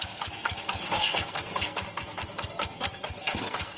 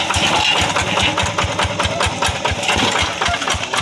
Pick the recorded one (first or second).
second